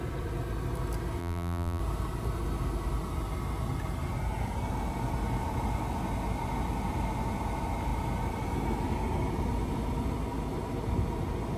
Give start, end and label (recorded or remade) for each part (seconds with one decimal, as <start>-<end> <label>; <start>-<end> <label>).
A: 0.0-1.2 recorded; 1.2-1.8 remade; 1.8-11.6 recorded